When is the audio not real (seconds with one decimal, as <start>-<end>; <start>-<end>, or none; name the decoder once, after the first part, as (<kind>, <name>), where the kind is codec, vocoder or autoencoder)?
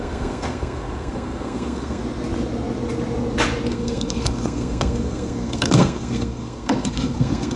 0.0-2.0 (codec, SNAC); 3.7-7.6